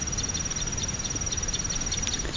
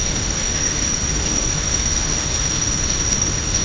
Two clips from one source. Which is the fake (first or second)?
second